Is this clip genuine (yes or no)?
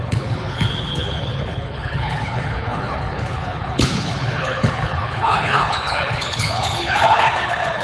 no